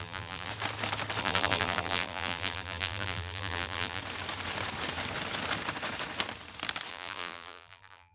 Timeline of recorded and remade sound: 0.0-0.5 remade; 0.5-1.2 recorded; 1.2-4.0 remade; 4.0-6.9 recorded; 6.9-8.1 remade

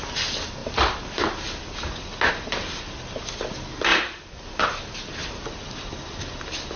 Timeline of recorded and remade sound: 0.0-3.9 recorded; 3.9-5.1 remade; 5.1-6.8 recorded

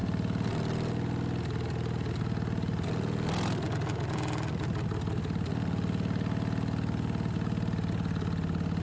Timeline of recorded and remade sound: 0.0-8.8 recorded

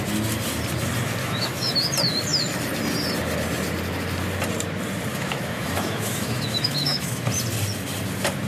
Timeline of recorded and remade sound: 0.0-1.2 recorded; 1.2-1.7 remade; 1.7-5.1 recorded; 5.1-7.3 remade; 7.3-8.5 recorded